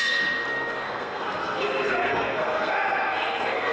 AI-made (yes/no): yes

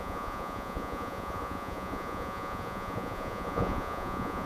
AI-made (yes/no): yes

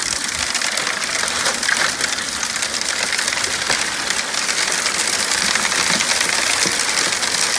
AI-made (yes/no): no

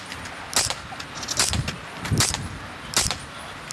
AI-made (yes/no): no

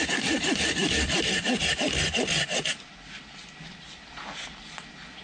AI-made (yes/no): no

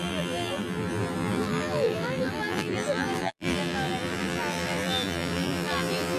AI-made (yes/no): yes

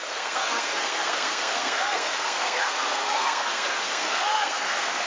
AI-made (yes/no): yes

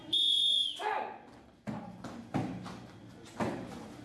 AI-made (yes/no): no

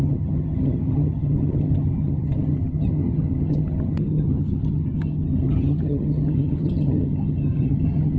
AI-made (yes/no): yes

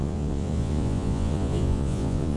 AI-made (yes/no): yes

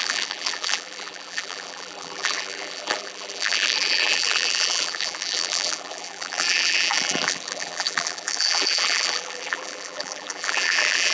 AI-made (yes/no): yes